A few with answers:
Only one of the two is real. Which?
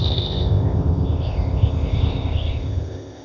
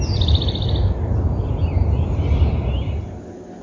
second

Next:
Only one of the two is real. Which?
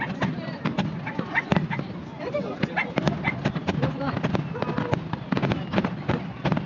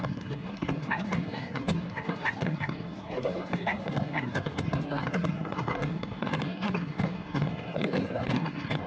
first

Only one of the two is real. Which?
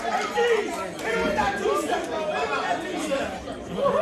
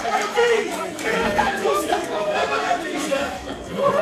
first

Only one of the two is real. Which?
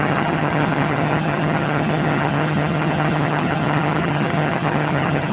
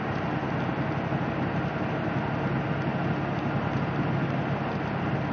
second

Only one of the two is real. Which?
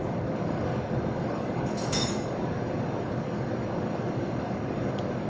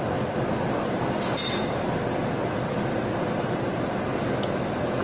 second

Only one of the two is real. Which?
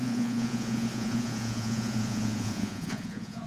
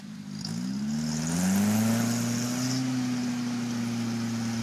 second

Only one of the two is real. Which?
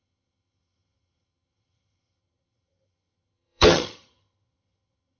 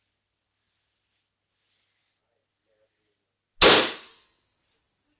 second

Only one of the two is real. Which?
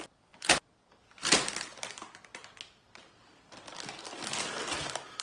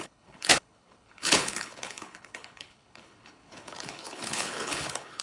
first